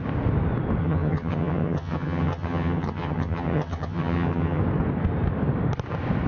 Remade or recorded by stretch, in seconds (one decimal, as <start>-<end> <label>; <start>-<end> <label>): 0.0-0.8 recorded; 0.8-4.6 remade; 4.6-6.3 recorded